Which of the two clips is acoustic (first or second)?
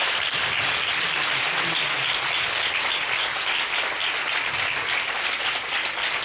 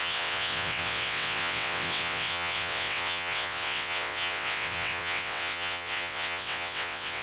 first